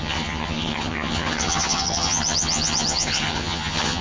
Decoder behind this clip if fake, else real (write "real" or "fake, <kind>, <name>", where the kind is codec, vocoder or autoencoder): fake, vocoder, HiFi-GAN